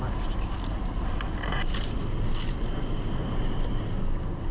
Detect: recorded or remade recorded